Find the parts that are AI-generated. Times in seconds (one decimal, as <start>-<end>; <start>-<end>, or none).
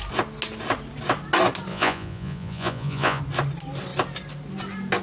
1.7-3.2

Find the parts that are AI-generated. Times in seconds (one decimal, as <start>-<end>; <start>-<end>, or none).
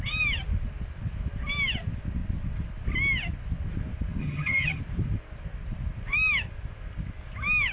4.2-4.8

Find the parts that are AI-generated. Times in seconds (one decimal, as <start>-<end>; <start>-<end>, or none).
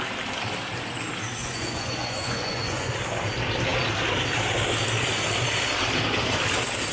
1.4-2.9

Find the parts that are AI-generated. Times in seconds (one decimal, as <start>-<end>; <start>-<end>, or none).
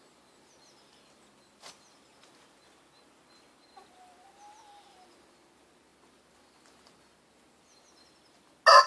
none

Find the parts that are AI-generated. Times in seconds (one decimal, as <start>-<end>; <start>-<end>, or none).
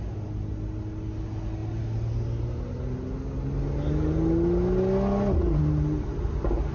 none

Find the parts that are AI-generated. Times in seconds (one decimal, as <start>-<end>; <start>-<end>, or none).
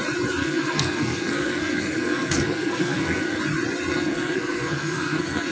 0.4-3.4; 3.9-5.5